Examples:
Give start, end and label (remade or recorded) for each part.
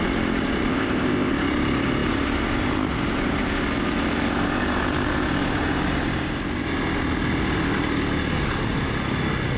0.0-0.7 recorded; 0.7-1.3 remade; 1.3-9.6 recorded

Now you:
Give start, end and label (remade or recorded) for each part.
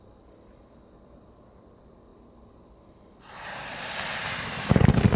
0.0-5.2 recorded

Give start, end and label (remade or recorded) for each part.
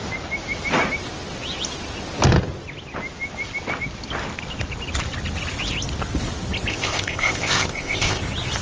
0.0-6.7 recorded; 6.7-8.2 remade; 8.2-8.6 recorded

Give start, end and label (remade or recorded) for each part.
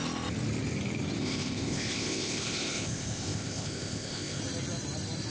0.0-1.2 recorded; 1.2-4.4 remade; 4.4-5.3 recorded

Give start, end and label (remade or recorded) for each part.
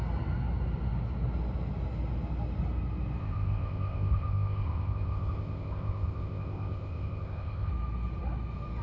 0.0-3.2 recorded; 3.2-7.7 remade; 7.7-8.8 recorded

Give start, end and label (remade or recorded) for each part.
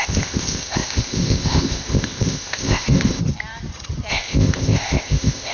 0.0-3.2 remade; 3.2-4.1 recorded; 4.1-5.5 remade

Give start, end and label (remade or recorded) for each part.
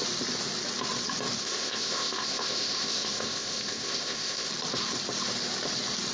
0.0-1.4 recorded; 1.4-4.5 remade; 4.5-6.1 recorded